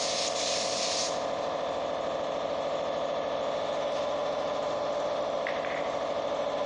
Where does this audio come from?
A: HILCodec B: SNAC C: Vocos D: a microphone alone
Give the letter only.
D